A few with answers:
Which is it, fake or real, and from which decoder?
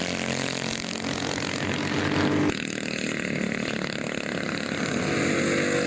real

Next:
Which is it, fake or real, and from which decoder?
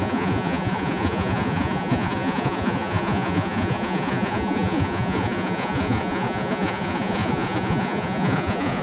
fake, vocoder, Vocos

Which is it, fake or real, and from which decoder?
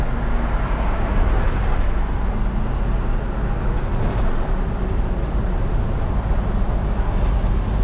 real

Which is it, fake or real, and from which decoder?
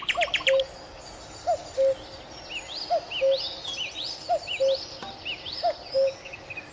real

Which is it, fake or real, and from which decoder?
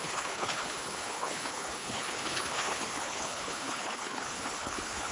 fake, codec, HILCodec